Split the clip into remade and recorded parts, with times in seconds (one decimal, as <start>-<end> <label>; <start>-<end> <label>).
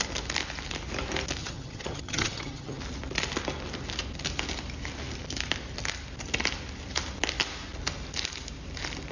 0.0-1.4 recorded; 1.4-2.8 remade; 2.8-9.1 recorded